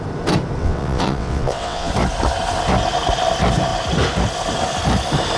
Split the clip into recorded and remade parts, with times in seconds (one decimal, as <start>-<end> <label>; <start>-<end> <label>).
0.0-0.6 recorded; 0.6-1.9 remade; 1.9-5.4 recorded